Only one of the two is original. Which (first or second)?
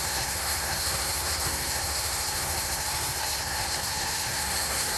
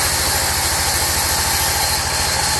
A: second